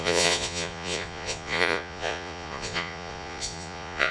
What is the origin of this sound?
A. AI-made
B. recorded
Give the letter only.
A